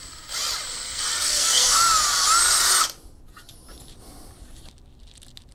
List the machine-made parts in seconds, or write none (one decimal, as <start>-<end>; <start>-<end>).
0.7-1.8